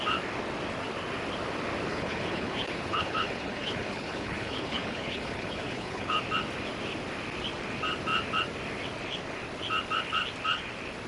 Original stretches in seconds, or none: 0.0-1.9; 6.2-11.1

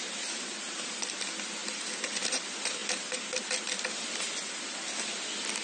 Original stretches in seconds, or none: 0.0-5.6

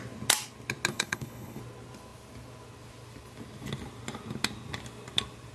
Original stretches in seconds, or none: 0.0-0.9; 1.6-5.5

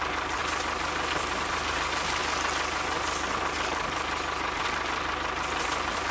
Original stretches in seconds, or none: 0.0-6.1

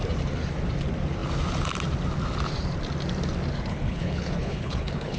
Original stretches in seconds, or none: 0.0-3.7

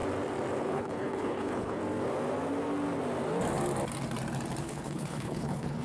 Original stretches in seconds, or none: 0.0-0.6; 1.8-4.6

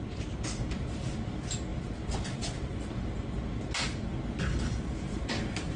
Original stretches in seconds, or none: 0.0-5.8